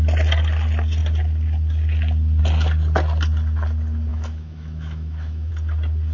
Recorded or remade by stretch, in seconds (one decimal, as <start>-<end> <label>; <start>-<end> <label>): 0.0-4.1 recorded; 4.1-5.5 remade; 5.5-6.1 recorded